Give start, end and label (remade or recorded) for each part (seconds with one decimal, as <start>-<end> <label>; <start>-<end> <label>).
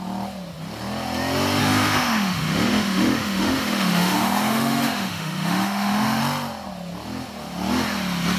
0.0-1.6 recorded; 1.6-6.2 remade; 6.2-8.4 recorded